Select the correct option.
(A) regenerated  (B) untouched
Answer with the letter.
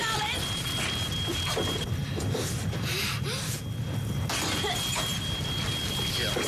B